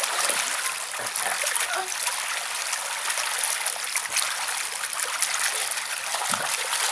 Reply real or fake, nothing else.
real